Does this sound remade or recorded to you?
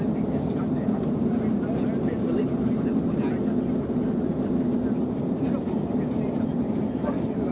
recorded